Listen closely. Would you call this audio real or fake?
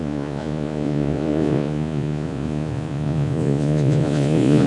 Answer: fake